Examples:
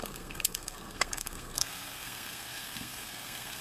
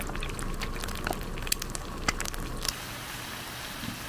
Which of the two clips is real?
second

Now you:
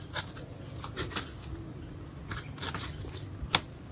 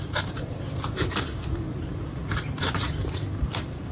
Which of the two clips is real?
first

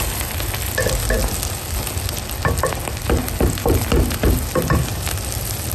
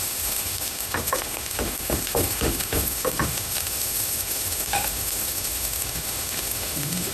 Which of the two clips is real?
first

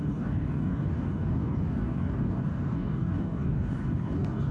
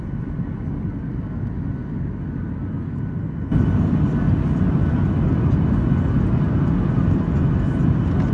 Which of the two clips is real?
second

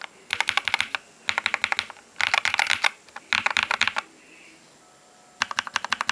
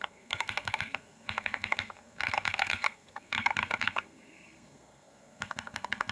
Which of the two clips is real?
first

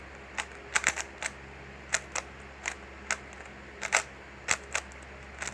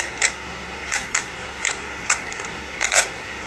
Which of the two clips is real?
first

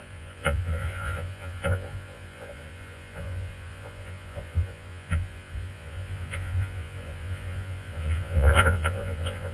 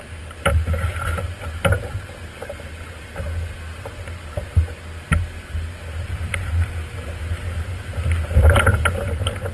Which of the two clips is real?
second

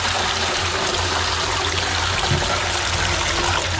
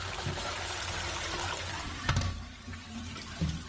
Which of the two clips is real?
first